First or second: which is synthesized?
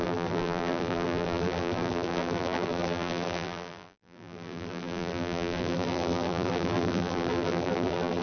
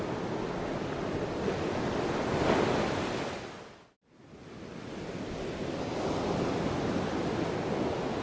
first